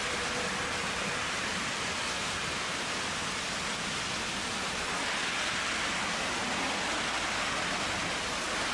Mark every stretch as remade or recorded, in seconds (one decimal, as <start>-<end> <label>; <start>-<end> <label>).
0.0-0.8 recorded; 0.8-3.4 remade; 3.4-8.7 recorded